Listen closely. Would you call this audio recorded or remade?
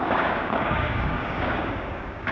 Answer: remade